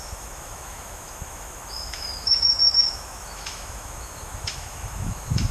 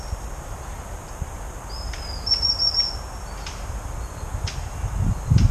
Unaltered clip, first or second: second